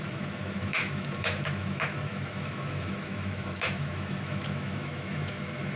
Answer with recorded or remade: remade